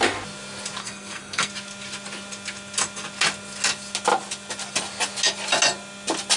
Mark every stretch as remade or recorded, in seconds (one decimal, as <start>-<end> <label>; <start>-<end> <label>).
0.0-0.8 recorded; 0.8-1.5 remade; 1.5-6.4 recorded